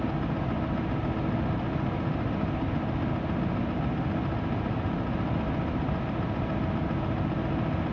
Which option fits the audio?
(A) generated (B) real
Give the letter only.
B